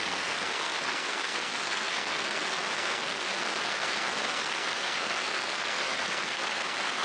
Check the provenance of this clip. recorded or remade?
remade